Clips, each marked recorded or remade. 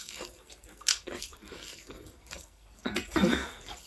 remade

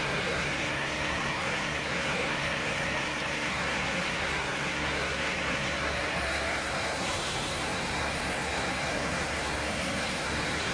remade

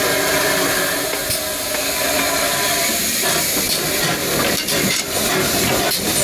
recorded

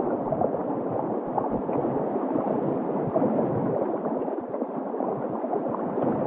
recorded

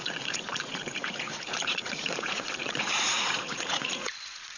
remade